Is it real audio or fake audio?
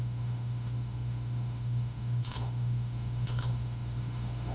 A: fake